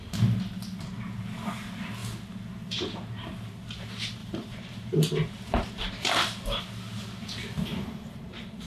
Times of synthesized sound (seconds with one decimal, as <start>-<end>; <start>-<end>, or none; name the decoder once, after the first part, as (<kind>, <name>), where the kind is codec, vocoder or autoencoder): 4.2-6.6 (vocoder, BigVGAN v2); 7.7-8.7